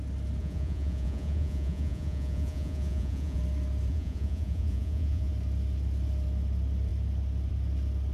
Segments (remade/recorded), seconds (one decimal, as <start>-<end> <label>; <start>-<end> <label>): 0.0-0.4 recorded; 0.4-3.4 remade; 3.4-3.9 recorded; 3.9-5.3 remade; 5.3-8.1 recorded